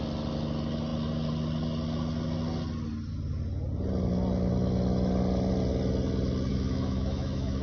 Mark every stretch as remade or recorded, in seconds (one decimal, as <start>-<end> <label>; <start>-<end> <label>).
0.0-6.5 recorded; 6.5-7.6 remade